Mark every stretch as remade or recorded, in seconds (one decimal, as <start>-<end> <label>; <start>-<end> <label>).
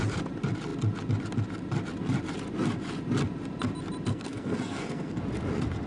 0.0-4.1 recorded; 4.1-5.2 remade; 5.2-5.9 recorded